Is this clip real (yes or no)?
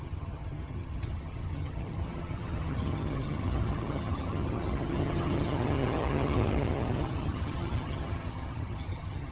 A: no